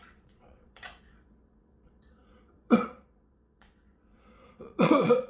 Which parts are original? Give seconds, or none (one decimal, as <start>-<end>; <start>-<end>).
none